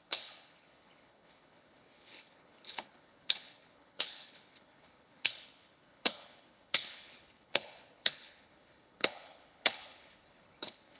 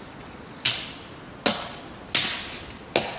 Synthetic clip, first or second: first